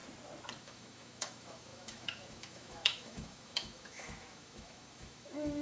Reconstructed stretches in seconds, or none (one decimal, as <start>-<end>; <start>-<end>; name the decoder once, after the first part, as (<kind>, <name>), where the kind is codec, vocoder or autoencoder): 0.6-5.6 (autoencoder, DAC-VAE)